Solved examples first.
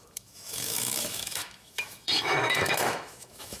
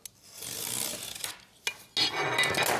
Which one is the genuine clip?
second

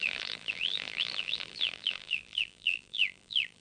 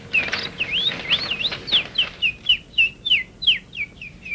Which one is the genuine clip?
second